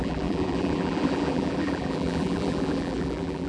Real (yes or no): no